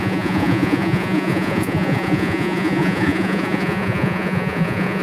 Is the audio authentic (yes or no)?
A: no